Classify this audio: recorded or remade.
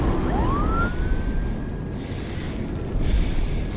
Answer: recorded